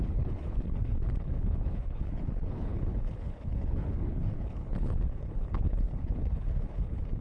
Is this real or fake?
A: fake